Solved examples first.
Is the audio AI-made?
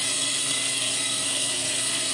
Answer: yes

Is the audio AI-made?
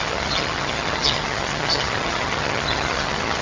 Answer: yes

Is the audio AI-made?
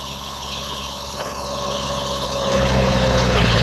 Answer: yes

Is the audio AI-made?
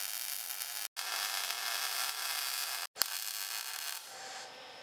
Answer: no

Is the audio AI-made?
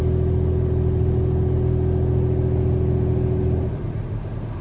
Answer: no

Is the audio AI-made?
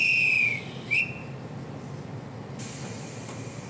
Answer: no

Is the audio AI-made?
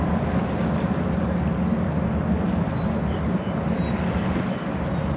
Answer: no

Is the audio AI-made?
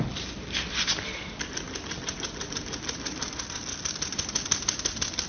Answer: no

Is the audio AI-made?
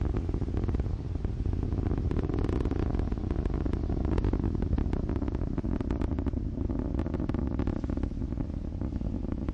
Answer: no